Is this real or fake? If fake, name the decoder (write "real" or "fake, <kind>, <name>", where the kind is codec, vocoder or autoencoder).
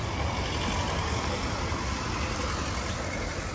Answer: real